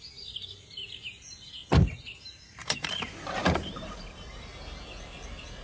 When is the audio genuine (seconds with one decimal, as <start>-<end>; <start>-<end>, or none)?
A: 0.0-2.6; 4.4-5.6